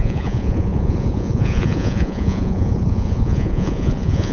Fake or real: fake